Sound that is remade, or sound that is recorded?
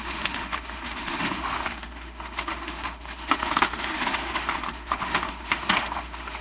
remade